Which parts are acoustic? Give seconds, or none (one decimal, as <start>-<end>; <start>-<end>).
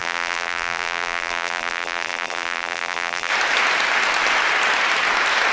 3.3-5.5